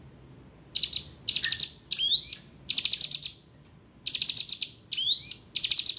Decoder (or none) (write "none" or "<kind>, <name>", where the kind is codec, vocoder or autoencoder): none